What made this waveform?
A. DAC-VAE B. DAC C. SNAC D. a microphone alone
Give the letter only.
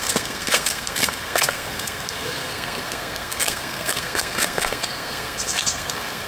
C